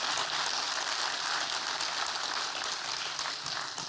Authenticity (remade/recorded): recorded